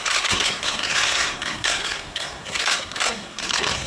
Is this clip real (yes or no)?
no